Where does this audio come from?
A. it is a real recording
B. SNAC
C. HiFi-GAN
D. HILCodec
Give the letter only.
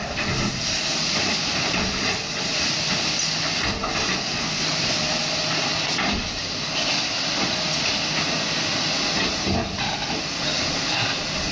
A